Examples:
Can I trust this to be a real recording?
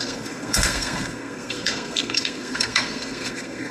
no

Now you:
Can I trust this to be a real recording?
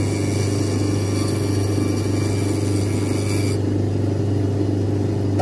yes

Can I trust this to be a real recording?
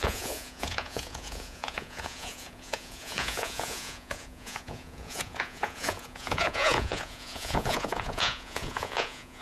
no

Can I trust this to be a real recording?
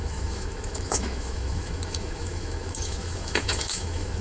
no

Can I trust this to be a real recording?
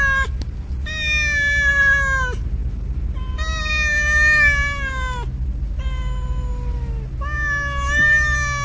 yes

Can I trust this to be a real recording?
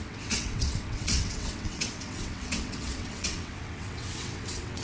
no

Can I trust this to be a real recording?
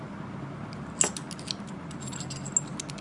yes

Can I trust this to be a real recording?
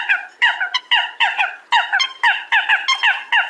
yes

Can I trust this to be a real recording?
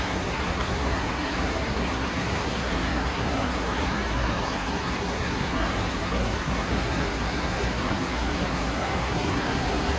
no